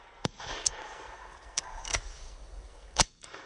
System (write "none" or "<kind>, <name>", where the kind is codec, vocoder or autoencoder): codec, SNAC